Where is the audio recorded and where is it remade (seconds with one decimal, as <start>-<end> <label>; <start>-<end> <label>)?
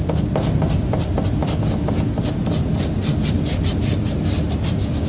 0.0-5.1 recorded